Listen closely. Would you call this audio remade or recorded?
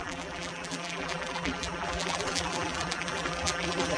remade